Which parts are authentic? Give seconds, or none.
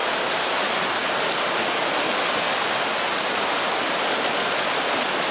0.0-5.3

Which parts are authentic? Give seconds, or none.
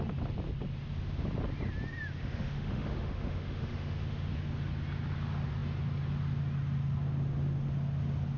0.0-2.2; 4.3-8.4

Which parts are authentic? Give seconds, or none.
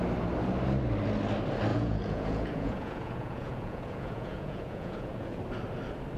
0.0-1.7; 5.4-6.2